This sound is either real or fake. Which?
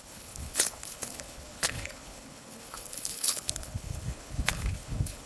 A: fake